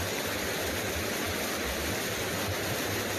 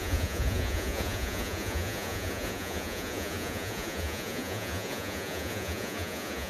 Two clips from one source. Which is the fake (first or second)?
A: second